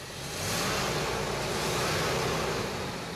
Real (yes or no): yes